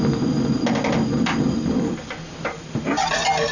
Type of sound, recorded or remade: recorded